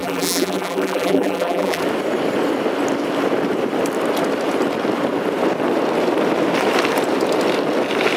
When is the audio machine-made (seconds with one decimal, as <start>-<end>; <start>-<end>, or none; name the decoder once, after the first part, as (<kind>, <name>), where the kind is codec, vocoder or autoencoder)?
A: 0.0-1.8 (vocoder, BigVGAN v2)